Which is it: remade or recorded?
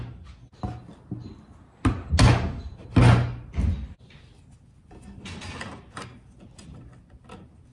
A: recorded